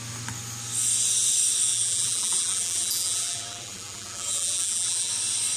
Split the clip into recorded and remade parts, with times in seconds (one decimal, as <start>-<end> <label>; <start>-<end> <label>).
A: 0.0-1.7 recorded; 1.7-5.1 remade; 5.1-5.6 recorded